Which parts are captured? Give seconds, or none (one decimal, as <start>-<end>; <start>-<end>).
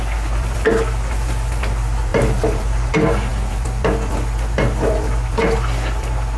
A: 0.0-2.1; 2.9-6.4